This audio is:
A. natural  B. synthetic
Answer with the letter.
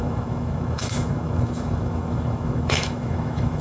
B